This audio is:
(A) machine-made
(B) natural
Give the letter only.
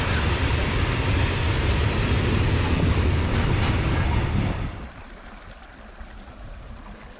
B